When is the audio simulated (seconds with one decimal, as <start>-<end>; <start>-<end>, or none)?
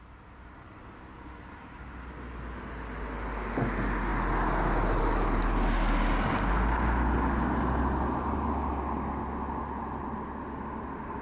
none